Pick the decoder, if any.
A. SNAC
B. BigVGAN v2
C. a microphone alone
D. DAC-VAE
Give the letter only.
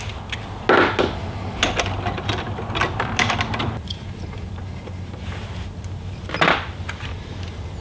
C